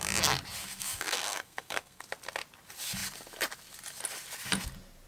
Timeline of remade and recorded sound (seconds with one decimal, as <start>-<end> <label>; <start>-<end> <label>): 0.0-0.6 recorded; 0.6-2.0 remade; 2.0-5.1 recorded